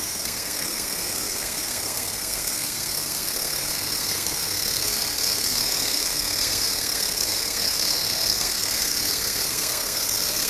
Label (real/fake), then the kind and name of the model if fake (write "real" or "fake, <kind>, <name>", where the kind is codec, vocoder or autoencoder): fake, codec, SNAC